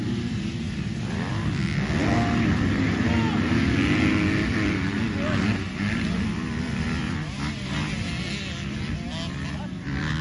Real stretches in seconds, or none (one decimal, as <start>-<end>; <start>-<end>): 0.0-10.2